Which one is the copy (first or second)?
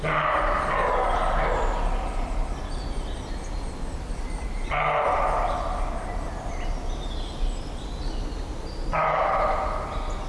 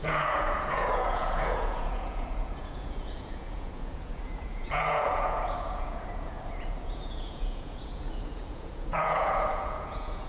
second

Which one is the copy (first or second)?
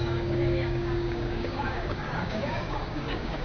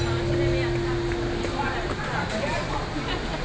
first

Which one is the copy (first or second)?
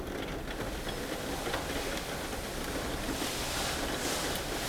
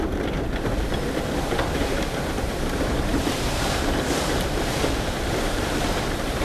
second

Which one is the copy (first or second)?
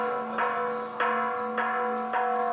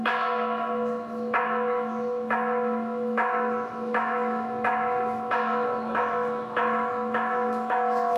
second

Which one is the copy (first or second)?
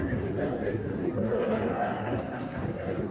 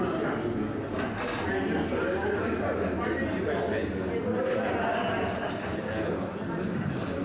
first